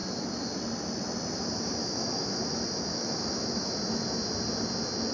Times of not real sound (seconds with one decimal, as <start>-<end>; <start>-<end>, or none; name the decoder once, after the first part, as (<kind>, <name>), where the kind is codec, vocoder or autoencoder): 1.8-2.4 (autoencoder, DAC-VAE); 2.9-3.9